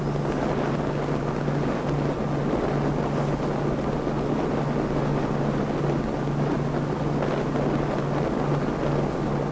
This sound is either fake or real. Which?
real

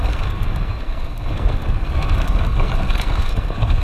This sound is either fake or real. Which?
fake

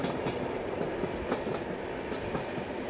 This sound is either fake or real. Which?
real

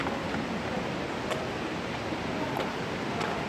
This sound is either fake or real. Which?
real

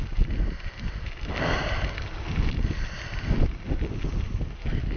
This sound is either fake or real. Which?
real